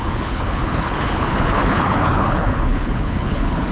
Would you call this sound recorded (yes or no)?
no